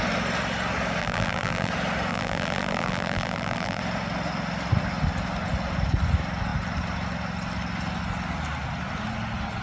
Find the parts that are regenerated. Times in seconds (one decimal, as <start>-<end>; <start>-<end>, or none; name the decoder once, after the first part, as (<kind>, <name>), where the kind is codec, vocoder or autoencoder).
1.0-1.7 (vocoder, BigVGAN v2); 2.1-3.8